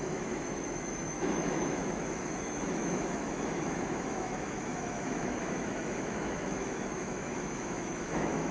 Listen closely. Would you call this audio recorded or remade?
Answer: remade